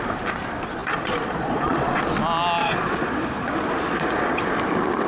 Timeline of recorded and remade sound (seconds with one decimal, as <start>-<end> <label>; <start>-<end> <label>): 0.0-0.8 recorded; 0.8-2.0 remade; 2.0-2.6 recorded; 2.6-4.4 remade; 4.4-5.1 recorded